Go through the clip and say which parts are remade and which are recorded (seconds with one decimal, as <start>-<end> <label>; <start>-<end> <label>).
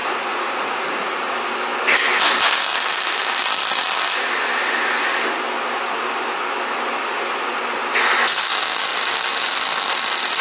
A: 0.0-1.4 remade; 1.4-10.4 recorded